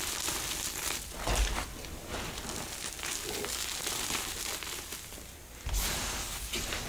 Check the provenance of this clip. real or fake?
real